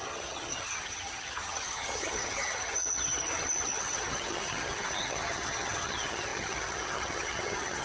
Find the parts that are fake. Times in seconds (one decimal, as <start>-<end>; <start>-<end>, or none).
0.0-7.8